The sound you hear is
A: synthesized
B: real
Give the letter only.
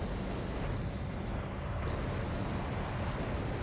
B